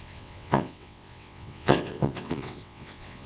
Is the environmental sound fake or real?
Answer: fake